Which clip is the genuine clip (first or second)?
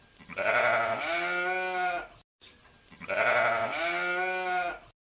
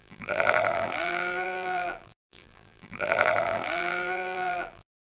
first